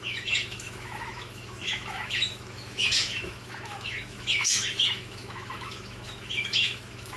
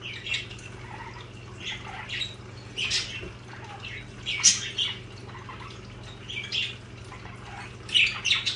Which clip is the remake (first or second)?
first